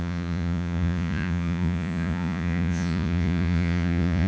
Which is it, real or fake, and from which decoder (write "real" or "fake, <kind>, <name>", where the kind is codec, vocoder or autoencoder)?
fake, vocoder, Vocos